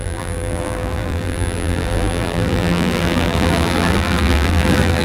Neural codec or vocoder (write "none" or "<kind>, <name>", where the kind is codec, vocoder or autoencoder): vocoder, BigVGAN v2